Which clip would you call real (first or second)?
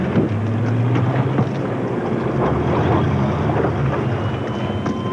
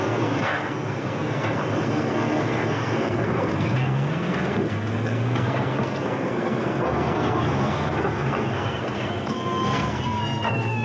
first